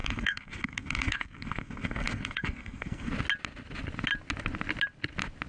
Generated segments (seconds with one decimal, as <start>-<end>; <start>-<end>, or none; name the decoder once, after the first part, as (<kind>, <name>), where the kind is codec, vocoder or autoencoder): 0.0-3.1 (codec, SNAC)